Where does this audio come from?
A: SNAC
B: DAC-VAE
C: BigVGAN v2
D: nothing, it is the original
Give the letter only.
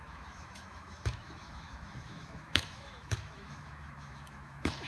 B